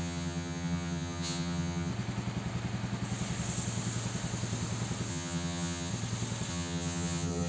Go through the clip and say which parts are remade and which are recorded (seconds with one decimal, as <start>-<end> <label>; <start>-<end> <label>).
0.0-1.9 remade; 1.9-5.1 recorded; 5.1-5.9 remade; 5.9-6.5 recorded; 6.5-7.5 remade